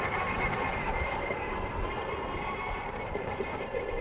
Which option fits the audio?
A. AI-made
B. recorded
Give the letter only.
A